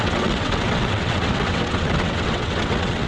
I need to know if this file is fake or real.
fake